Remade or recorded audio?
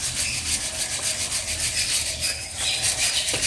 recorded